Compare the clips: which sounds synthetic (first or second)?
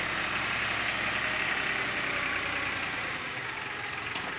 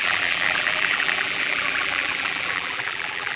second